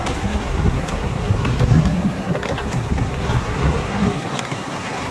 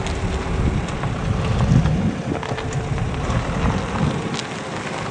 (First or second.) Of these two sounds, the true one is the second